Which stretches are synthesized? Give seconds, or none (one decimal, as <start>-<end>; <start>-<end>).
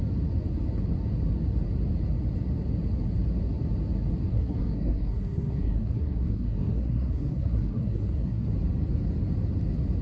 4.3-8.5